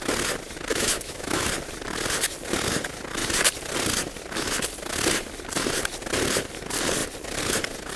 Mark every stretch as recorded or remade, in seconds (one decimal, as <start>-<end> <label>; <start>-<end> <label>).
0.0-0.7 recorded; 0.7-1.5 remade; 1.5-8.0 recorded